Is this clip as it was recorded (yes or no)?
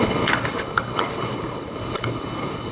no